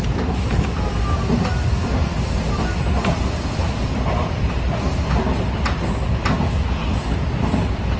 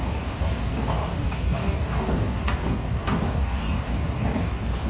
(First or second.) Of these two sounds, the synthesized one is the second